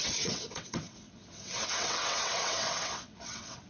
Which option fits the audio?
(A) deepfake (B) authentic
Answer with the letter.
A